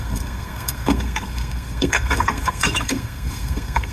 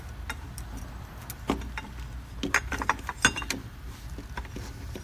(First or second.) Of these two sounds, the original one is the second